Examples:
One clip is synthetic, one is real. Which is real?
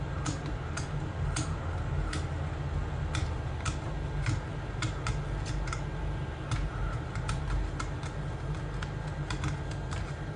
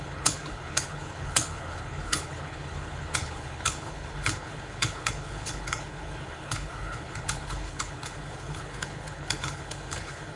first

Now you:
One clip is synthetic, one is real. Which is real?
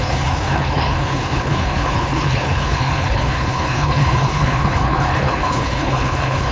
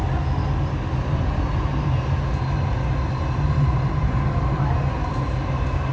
second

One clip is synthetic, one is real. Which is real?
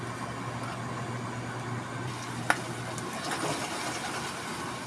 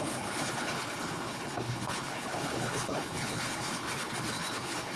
first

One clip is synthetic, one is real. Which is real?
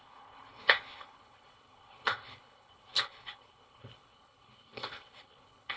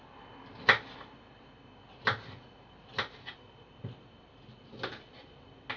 second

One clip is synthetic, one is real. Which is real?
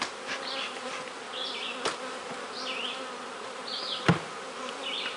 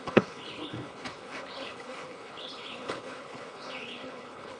first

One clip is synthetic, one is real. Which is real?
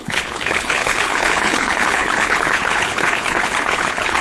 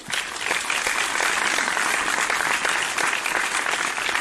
second